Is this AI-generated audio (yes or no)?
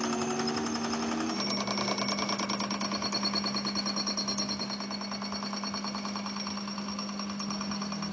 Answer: no